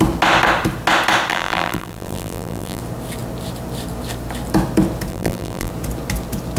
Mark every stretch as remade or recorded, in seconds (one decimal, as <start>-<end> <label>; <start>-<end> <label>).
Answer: 0.0-1.3 recorded; 1.3-2.8 remade; 2.8-5.1 recorded; 5.1-5.7 remade; 5.7-6.6 recorded